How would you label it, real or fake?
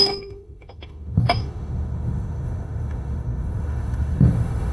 fake